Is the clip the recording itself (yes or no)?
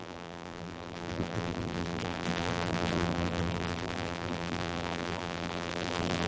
no